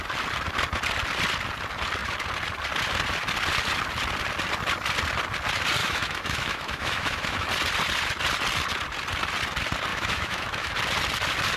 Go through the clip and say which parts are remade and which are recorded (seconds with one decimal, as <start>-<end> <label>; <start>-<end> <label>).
0.0-5.8 recorded; 5.8-7.5 remade; 7.5-9.9 recorded; 9.9-10.7 remade; 10.7-11.6 recorded